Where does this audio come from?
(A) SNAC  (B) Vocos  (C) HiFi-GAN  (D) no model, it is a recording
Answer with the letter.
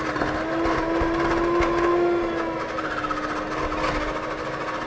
D